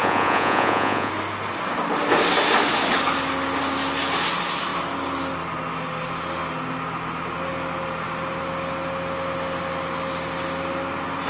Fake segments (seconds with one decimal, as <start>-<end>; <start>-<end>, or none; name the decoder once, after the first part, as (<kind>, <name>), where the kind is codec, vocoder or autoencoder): 0.0-1.1 (vocoder, Vocos)